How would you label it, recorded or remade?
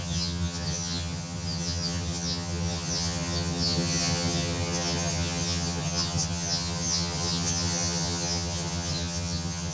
remade